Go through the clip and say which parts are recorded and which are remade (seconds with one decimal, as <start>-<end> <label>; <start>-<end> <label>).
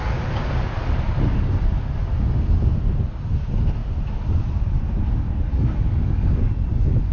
0.0-5.5 recorded; 5.5-6.4 remade; 6.4-7.1 recorded